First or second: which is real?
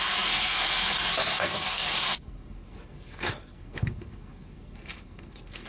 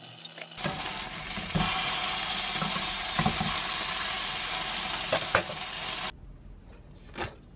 second